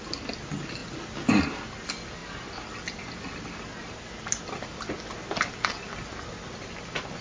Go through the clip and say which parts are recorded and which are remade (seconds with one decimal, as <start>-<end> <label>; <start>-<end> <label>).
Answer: 0.0-7.2 recorded